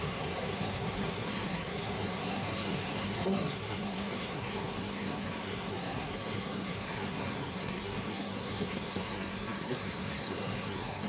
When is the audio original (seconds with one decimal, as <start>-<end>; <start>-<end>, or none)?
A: none